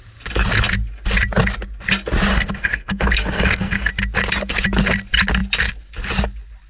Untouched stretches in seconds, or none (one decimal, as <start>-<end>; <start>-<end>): 0.0-2.3; 3.9-6.7